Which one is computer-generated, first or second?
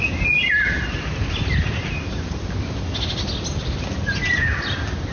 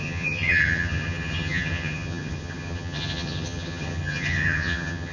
second